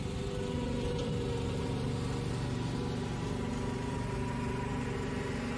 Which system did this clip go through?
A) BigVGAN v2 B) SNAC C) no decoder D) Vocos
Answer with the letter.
C